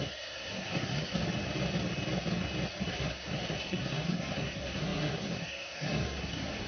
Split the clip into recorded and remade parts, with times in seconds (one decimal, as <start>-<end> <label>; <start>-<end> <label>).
0.0-1.2 remade; 1.2-2.9 recorded; 2.9-6.7 remade